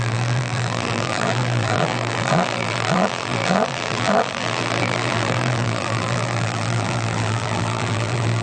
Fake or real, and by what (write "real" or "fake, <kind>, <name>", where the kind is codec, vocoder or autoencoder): fake, vocoder, BigVGAN v2